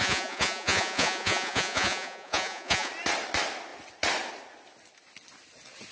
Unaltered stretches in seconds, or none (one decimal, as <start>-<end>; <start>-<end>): 2.9-5.9

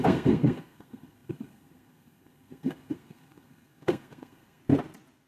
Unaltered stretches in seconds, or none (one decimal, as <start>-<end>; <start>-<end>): 4.6-5.3

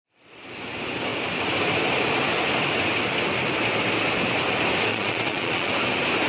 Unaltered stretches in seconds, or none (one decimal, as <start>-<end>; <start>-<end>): 0.0-4.9; 5.7-6.3

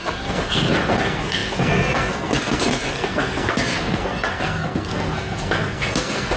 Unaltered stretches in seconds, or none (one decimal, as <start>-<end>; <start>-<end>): none

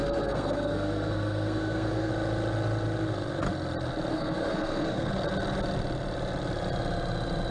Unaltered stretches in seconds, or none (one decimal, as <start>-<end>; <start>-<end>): 2.1-4.1; 5.1-7.5

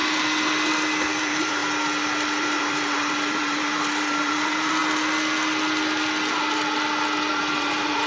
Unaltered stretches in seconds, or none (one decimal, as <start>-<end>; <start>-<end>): 0.0-1.2; 1.6-2.6; 4.8-7.3

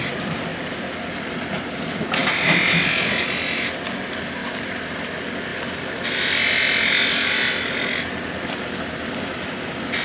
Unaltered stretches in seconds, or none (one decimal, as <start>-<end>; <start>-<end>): 0.0-4.4; 5.0-5.5; 7.5-10.0

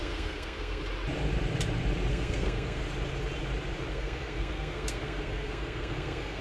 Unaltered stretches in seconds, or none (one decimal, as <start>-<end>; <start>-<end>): 0.8-2.1; 2.8-3.9